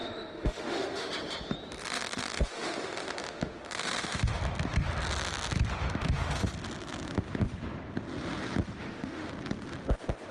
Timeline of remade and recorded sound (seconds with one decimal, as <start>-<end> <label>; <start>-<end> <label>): 0.0-1.1 remade; 1.1-1.8 recorded; 1.8-4.4 remade; 4.4-5.8 recorded; 5.8-6.5 remade; 6.5-8.8 recorded; 8.8-9.3 remade; 9.3-10.3 recorded